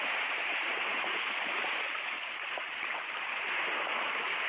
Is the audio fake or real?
fake